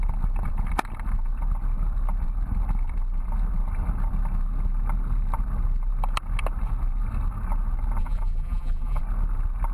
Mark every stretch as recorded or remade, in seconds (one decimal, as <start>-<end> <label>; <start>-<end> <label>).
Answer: 0.0-8.0 recorded; 8.0-9.0 remade; 9.0-9.7 recorded